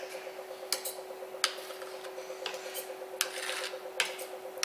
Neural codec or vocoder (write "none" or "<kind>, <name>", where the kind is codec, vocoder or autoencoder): none